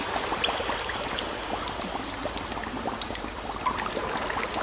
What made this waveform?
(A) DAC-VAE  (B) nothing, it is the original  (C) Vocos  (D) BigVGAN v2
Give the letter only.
B